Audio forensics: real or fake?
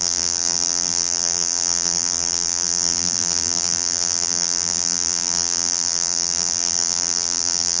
fake